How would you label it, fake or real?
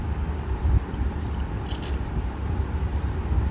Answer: real